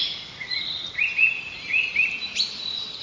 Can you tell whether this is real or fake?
fake